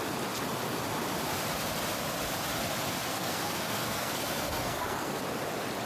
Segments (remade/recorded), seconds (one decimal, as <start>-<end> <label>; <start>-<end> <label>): 0.0-3.1 recorded; 3.1-5.2 remade; 5.2-5.9 recorded